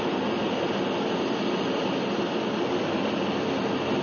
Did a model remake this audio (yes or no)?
no